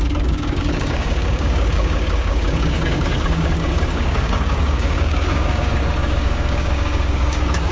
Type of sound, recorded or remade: remade